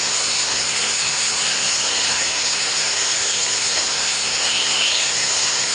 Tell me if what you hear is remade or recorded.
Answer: remade